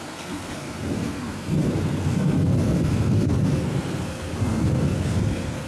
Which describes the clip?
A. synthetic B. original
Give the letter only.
A